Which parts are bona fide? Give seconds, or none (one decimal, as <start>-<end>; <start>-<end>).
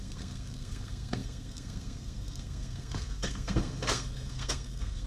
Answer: none